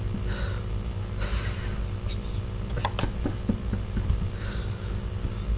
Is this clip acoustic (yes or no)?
yes